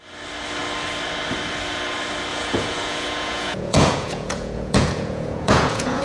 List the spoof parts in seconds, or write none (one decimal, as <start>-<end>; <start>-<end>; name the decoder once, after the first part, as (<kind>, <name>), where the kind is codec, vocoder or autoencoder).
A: 2.3-6.0 (vocoder, Vocos)